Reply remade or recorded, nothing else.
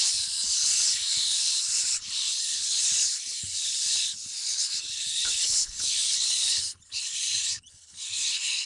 remade